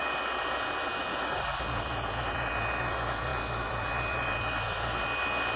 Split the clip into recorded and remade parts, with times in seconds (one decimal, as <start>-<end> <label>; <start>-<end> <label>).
0.0-1.1 recorded; 1.1-1.6 remade; 1.6-5.6 recorded